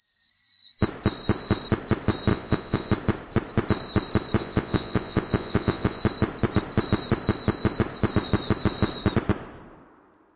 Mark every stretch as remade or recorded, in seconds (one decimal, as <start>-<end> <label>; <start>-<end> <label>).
0.0-2.3 recorded; 2.3-2.9 remade; 2.9-4.4 recorded; 4.4-6.0 remade; 6.0-10.4 recorded